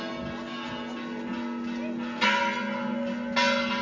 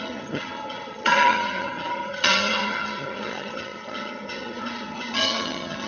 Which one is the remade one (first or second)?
second